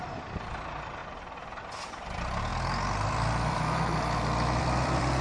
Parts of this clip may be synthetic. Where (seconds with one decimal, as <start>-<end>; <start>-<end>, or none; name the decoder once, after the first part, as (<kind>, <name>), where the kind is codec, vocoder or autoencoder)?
0.0-5.2 (vocoder, BigVGAN v2)